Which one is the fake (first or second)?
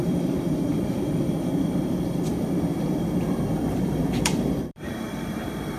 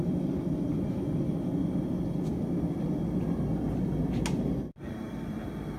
first